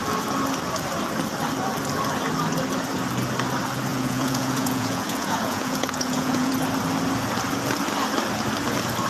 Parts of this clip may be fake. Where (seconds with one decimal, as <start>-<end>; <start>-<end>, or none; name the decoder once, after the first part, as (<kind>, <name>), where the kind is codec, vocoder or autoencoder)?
3.9-6.5 (vocoder, Vocos)